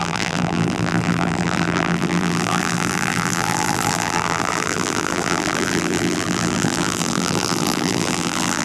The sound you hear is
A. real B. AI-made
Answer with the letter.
B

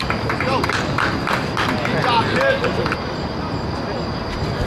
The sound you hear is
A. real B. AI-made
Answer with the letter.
A